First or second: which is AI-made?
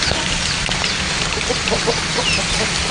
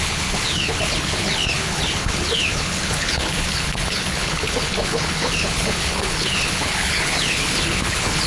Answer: second